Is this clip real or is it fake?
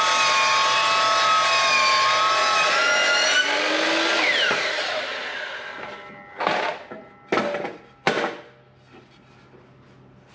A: real